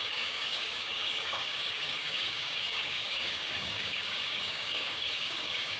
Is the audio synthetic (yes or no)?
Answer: yes